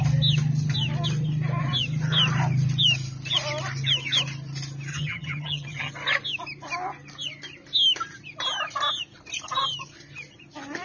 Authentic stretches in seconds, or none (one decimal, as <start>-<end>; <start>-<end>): 0.0-4.9; 5.9-10.8